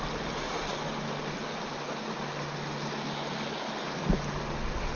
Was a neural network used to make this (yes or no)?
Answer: no